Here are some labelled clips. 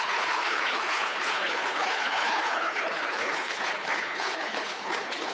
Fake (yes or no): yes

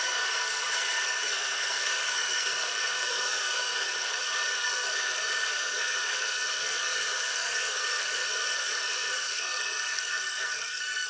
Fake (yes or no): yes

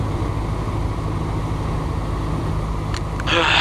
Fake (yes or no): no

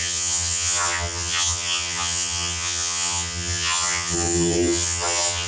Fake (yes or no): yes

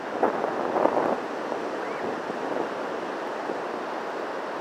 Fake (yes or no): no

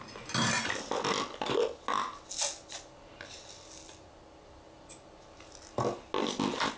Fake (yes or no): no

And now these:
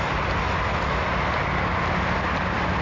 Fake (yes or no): no